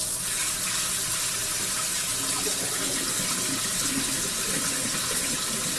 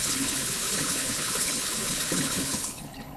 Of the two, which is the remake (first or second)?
second